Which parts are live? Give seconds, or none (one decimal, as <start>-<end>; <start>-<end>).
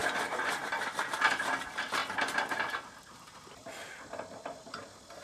0.0-5.2